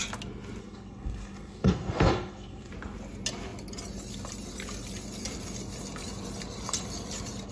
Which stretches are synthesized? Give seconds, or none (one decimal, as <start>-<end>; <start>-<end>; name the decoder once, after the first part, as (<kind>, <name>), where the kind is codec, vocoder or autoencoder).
0.6-2.7 (codec, SNAC)